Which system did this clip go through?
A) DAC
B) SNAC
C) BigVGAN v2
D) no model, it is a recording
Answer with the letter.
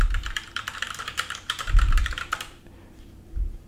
C